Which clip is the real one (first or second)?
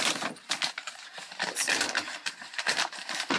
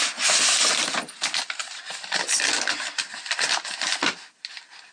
second